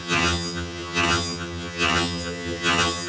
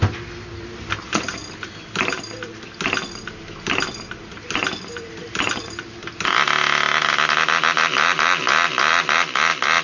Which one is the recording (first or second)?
second